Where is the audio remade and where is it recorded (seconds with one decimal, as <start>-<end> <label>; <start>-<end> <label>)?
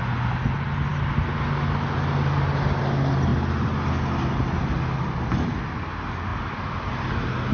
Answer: 0.0-7.5 recorded